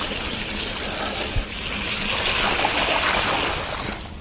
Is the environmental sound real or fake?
real